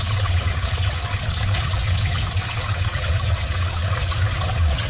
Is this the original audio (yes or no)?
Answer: no